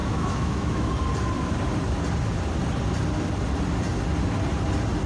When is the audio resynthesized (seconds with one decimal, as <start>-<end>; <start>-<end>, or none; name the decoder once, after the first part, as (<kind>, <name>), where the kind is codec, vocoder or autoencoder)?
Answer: 0.0-0.9 (autoencoder, DAC-VAE)